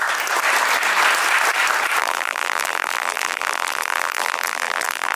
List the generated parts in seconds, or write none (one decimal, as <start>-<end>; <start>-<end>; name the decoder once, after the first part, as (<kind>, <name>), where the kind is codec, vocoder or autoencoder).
2.0-5.2 (vocoder, BigVGAN v2)